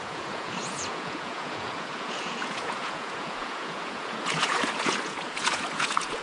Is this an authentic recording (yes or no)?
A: no